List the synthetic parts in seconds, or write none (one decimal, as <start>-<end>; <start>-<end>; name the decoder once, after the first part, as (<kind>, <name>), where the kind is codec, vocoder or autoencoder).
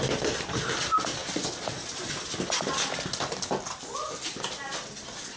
none